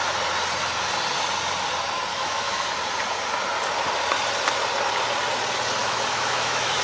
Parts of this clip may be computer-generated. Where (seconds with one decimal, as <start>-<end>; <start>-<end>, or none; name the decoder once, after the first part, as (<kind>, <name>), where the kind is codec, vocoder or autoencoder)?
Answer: 2.1-2.7 (autoencoder, DAC-VAE); 5.8-6.8